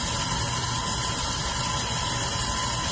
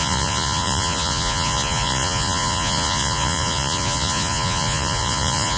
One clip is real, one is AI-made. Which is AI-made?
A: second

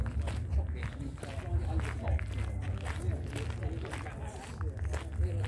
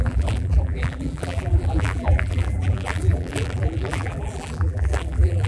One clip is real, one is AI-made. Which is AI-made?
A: second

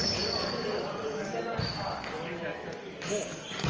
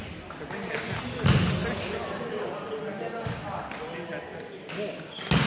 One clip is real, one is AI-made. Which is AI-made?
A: first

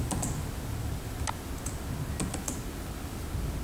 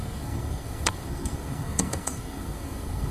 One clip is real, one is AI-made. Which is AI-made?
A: second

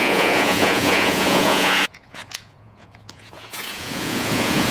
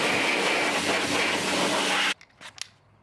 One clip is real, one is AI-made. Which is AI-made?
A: first